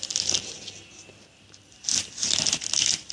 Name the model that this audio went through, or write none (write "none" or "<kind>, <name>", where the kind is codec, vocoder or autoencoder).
none